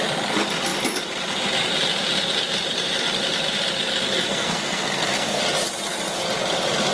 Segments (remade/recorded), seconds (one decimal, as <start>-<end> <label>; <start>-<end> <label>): 0.0-4.1 recorded; 4.1-5.4 remade; 5.4-6.9 recorded